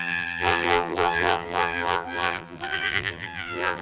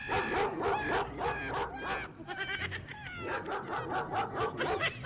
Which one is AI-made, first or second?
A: first